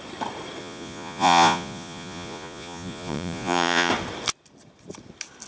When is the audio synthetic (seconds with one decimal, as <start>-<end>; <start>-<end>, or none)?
0.6-3.9